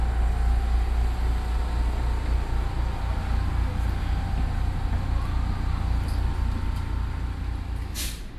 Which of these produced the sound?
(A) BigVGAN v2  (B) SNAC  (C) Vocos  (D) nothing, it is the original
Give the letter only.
D